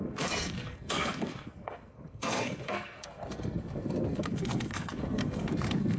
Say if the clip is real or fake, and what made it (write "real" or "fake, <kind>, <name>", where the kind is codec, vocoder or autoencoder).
fake, codec, SNAC